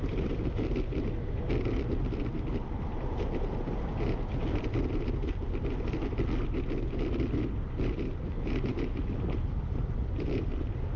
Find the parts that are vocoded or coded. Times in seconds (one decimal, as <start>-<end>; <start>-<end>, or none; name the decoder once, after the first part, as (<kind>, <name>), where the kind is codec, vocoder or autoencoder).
none